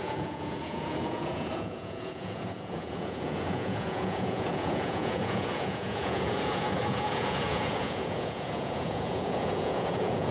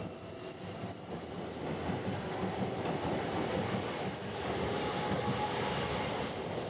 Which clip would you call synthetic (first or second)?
first